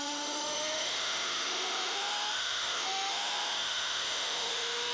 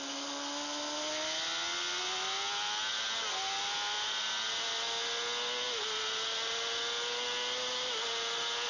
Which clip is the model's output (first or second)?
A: first